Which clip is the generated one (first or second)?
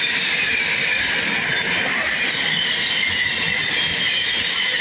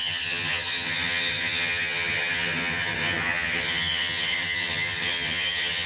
second